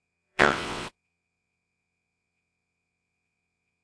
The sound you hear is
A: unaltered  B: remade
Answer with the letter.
B